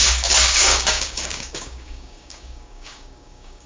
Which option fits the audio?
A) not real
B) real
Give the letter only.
A